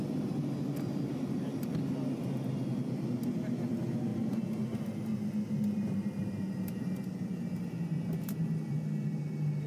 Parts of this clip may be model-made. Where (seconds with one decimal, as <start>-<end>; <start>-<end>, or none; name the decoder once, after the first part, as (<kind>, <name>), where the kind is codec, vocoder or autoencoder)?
none